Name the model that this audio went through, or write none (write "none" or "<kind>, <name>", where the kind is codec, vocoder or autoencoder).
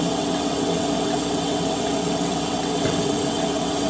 vocoder, WaveNeXt